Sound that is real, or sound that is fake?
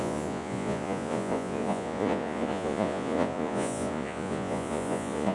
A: fake